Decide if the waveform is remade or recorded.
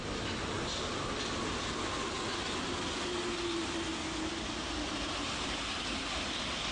recorded